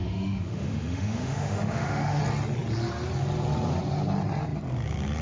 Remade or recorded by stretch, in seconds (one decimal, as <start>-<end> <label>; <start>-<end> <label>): 0.0-2.2 remade; 2.2-5.2 recorded